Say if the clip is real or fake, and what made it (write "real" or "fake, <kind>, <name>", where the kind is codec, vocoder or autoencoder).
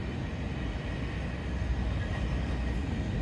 real